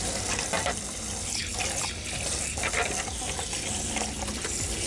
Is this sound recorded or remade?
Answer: recorded